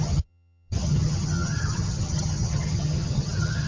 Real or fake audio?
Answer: fake